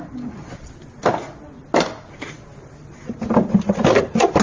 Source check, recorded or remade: recorded